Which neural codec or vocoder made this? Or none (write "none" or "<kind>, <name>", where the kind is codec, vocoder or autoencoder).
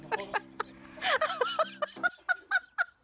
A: none